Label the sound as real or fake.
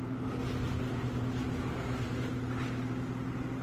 real